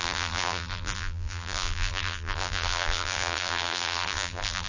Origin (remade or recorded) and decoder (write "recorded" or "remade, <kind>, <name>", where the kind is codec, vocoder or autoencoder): remade, vocoder, BigVGAN v2